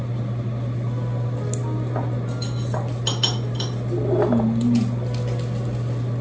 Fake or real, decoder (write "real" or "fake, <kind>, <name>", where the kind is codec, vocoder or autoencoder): real